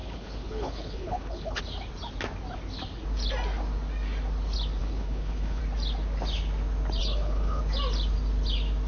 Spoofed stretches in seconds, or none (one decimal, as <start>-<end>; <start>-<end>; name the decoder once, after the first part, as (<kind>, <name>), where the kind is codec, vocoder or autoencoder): 0.0-1.6 (codec, HILCodec); 4.8-5.6; 7.0-7.6